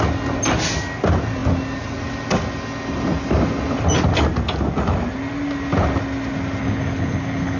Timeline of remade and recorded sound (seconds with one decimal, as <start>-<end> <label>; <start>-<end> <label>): 0.0-6.6 recorded; 6.6-7.6 remade